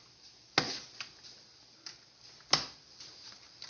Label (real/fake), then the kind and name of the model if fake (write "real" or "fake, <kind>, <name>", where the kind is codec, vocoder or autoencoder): real